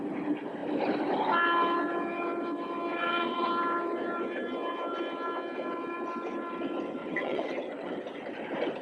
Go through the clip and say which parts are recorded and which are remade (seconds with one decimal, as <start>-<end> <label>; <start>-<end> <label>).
0.0-2.9 recorded; 2.9-3.5 remade; 3.5-7.0 recorded; 7.0-7.9 remade; 7.9-8.8 recorded